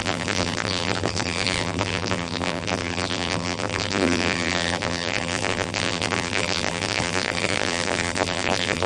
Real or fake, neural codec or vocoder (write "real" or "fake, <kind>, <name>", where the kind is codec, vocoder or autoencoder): fake, vocoder, BigVGAN v2